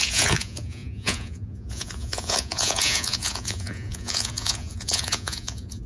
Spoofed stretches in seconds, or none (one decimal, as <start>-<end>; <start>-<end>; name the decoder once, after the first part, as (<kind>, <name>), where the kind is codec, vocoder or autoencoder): 0.0-5.9 (vocoder, Vocos)